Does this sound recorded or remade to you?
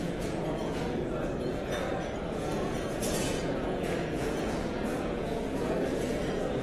remade